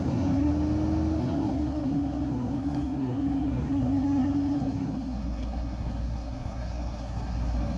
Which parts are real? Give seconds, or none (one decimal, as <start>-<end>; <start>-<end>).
0.5-1.2